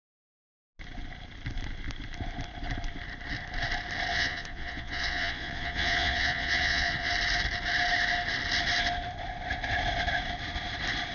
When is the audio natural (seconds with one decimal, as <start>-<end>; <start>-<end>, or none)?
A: 0.0-4.1; 7.1-11.1